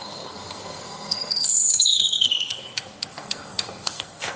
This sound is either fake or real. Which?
fake